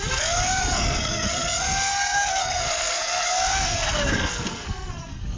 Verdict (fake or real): fake